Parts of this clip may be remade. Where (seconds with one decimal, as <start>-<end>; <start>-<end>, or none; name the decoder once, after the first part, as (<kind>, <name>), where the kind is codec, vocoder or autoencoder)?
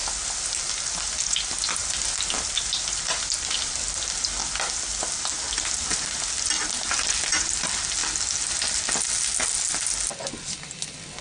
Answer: none